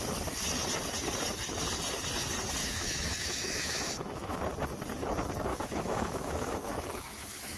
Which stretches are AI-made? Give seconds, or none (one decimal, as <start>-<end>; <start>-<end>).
2.6-4.4; 5.5-7.6